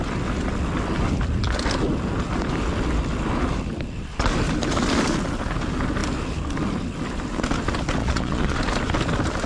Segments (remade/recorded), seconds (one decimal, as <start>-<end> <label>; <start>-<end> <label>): 0.0-8.0 recorded; 8.0-8.6 remade; 8.6-9.5 recorded